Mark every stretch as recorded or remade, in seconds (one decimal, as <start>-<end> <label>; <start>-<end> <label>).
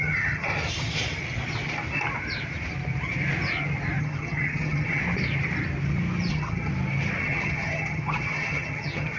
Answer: 0.0-0.5 remade; 0.5-4.0 recorded; 4.0-5.0 remade; 5.0-6.3 recorded; 6.3-6.7 remade; 6.7-7.2 recorded; 7.2-9.2 remade